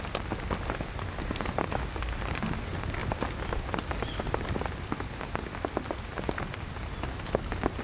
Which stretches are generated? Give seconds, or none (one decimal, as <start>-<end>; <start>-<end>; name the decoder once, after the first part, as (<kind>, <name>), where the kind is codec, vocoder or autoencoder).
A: none